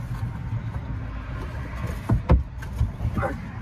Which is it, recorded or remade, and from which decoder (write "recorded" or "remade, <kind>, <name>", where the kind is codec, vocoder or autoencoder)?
recorded